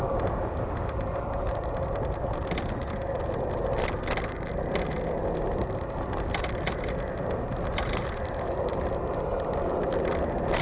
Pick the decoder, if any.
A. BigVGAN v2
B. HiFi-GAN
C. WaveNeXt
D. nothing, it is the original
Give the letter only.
D